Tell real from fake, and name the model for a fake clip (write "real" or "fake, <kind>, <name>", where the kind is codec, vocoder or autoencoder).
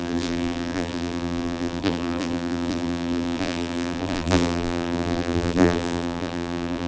fake, vocoder, BigVGAN v2